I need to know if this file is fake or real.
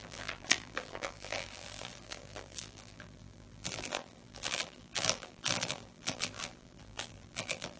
fake